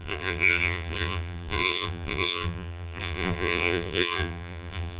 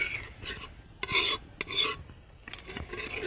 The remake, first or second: first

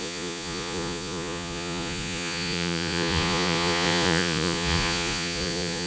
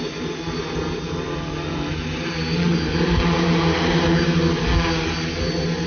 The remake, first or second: first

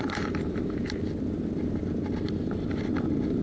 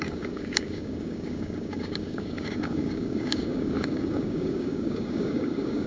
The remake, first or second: second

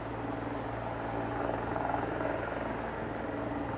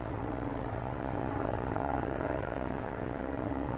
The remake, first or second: second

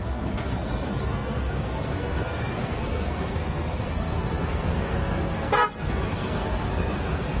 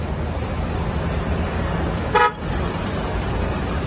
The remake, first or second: first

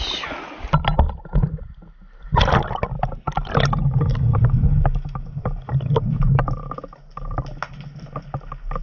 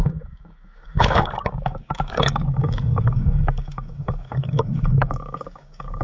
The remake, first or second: second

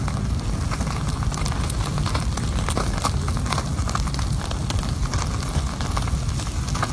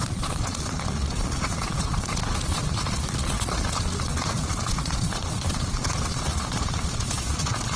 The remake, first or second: second